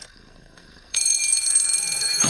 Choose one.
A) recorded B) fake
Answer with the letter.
B